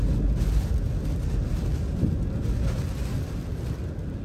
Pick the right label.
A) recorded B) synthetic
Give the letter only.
A